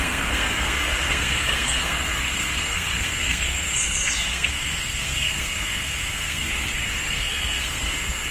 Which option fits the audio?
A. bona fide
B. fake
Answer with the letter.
B